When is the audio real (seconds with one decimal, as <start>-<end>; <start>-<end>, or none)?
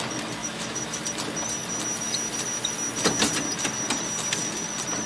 0.0-0.4; 1.0-5.1